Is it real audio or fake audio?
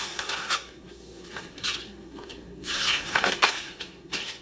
fake